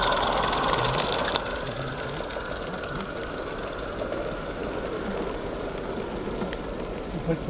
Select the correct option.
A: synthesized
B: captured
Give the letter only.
B